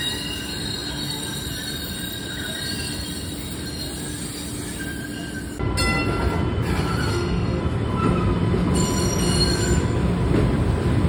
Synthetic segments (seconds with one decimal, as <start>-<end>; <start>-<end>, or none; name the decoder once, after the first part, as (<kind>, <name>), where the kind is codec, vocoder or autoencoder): 7.1-7.6 (autoencoder, DAC-VAE)